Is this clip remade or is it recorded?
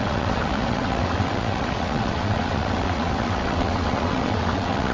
remade